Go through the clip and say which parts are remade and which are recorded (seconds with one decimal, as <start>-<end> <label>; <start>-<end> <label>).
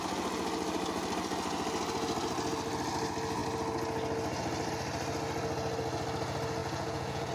0.0-6.6 recorded; 6.6-7.3 remade